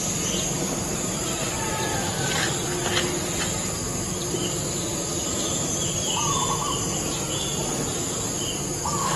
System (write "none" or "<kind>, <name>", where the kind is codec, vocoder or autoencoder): none